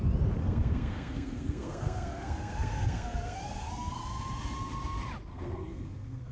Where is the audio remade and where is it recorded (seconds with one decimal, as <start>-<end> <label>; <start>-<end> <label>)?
0.0-0.4 recorded; 0.4-4.0 remade; 4.0-5.3 recorded; 5.3-6.3 remade